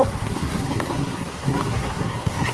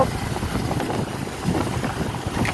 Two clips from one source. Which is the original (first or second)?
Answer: second